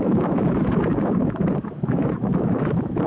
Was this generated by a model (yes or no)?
yes